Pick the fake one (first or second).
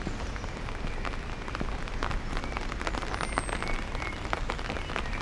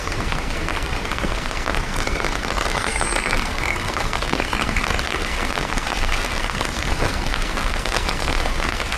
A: second